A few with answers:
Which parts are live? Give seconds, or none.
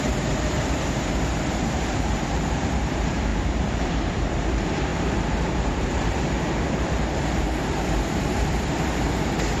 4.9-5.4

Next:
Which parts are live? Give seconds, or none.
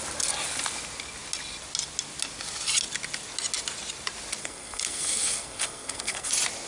0.0-4.4; 6.3-6.7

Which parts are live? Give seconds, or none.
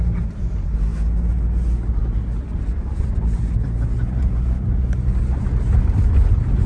0.0-6.7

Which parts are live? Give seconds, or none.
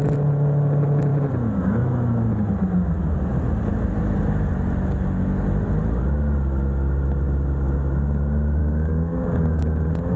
0.0-8.6; 9.6-10.2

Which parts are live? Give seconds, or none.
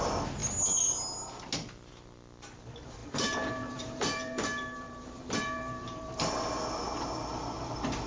0.0-3.0; 6.3-8.1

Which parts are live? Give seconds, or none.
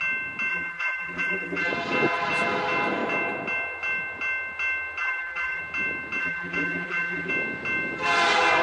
0.0-0.5; 1.7-5.0; 5.6-6.2; 7.3-8.6